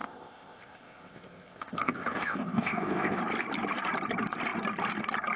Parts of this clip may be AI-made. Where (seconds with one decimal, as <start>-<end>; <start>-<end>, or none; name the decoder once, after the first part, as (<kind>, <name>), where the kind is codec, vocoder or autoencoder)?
0.0-3.2 (codec, ZipCodec)